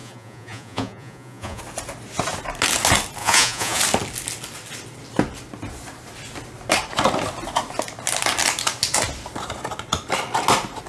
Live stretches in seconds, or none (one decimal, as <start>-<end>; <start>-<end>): 1.6-3.2; 3.8-10.9